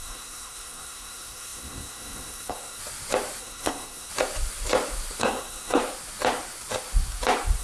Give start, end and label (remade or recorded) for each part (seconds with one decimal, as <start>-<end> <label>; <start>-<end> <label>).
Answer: 0.0-2.8 remade; 2.8-3.4 recorded; 3.4-4.1 remade; 4.1-5.2 recorded; 5.2-5.8 remade; 5.8-7.6 recorded